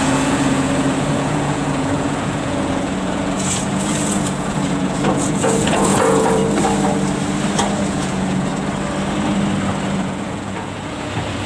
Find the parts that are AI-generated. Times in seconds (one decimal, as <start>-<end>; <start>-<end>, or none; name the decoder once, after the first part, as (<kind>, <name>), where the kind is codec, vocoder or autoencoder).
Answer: 0.0-6.4 (vocoder, Vocos); 7.8-8.5; 10.0-11.5